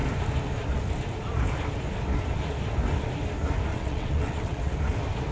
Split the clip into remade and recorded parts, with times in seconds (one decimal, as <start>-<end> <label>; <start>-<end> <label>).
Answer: 0.0-3.7 recorded; 3.7-4.7 remade; 4.7-5.3 recorded